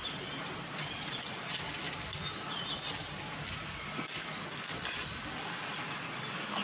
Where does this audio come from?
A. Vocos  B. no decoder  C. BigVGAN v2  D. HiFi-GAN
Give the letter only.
B